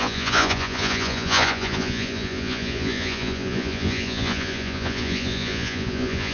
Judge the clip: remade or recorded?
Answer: remade